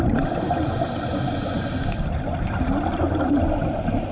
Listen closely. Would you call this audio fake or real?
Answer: real